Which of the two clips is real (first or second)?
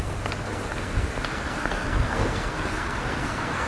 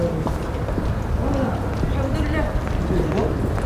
second